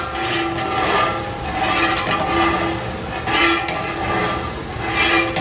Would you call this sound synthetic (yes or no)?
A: no